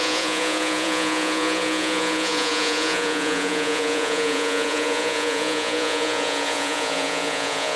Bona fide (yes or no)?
no